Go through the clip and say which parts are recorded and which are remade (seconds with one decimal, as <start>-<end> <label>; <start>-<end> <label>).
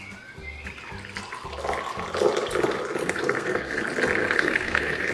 0.0-3.0 recorded; 3.0-3.8 remade; 3.8-4.2 recorded; 4.2-5.1 remade